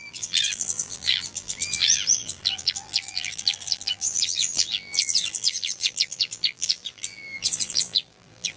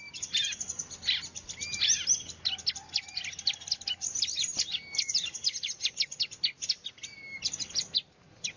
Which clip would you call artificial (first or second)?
first